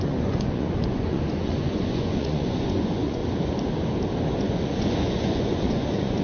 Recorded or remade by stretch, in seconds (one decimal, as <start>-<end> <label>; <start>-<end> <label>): 0.0-3.2 remade; 3.2-4.3 recorded; 4.3-6.2 remade